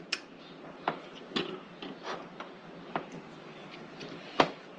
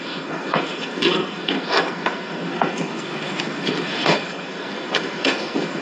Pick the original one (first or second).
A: first